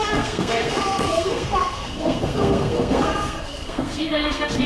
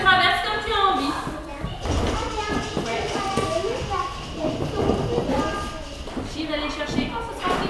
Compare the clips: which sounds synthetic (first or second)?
first